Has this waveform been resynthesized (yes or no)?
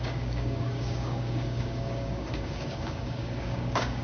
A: yes